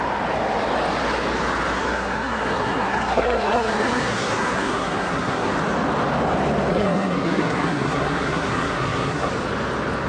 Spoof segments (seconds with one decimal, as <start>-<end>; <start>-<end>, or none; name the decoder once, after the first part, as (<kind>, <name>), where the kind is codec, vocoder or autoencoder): 1.8-5.5 (codec, SNAC); 6.7-9.3